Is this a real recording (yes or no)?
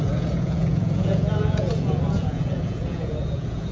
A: no